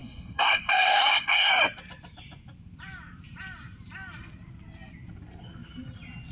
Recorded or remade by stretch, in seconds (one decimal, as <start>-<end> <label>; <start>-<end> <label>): 0.0-1.5 remade; 1.5-6.3 recorded